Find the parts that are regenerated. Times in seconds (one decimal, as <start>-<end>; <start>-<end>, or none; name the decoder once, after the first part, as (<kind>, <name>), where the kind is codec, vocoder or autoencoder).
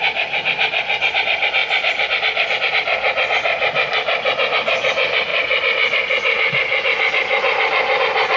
none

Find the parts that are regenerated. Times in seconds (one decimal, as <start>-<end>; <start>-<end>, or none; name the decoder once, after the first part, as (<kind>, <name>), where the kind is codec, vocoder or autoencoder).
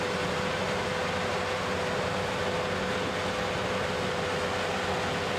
none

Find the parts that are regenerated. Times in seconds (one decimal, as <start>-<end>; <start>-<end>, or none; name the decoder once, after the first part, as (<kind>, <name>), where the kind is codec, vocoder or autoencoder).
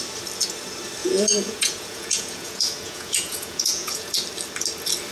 1.0-4.1 (vocoder, Vocos)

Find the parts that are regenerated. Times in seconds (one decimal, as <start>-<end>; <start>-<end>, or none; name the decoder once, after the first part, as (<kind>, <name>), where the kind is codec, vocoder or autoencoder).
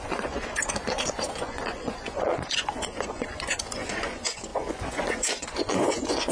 0.0-6.3 (vocoder, Vocos)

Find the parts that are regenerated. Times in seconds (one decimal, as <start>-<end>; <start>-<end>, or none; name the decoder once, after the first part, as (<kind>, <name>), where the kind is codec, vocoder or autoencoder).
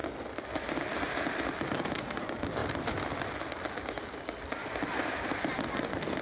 1.3-6.2 (vocoder, BigVGAN v2)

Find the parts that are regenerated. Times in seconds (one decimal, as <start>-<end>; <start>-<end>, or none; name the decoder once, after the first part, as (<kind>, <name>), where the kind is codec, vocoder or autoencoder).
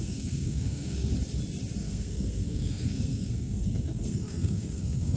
0.0-1.1 (codec, SNAC); 1.8-5.2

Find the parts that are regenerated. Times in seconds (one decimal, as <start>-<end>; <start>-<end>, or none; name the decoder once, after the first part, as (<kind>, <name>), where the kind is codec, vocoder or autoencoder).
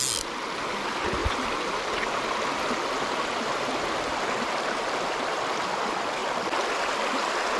none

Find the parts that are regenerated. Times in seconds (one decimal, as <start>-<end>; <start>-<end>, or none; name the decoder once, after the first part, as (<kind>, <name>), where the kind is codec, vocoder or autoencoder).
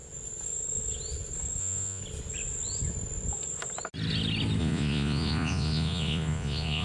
1.6-2.0 (vocoder, Vocos); 4.6-6.8